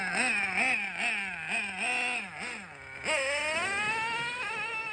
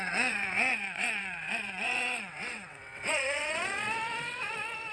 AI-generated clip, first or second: second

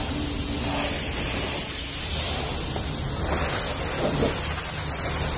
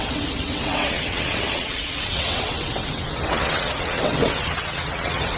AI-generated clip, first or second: second